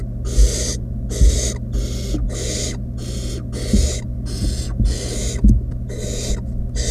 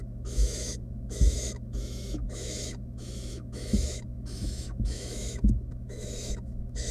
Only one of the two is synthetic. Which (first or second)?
second